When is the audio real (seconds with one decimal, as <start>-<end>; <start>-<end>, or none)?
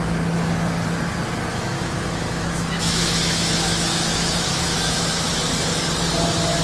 0.0-1.5; 5.5-6.6